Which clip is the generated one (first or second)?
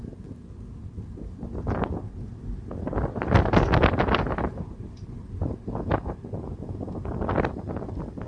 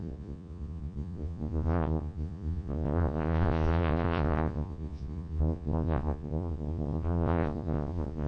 second